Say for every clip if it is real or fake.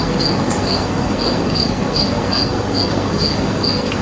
fake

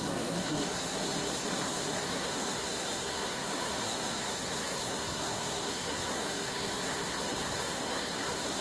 fake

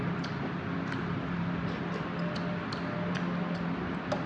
real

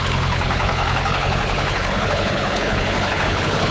fake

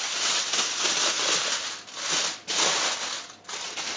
real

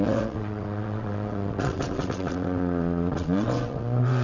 fake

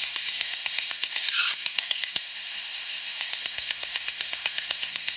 fake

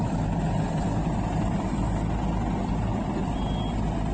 real